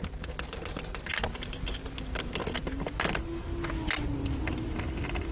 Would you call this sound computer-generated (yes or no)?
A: no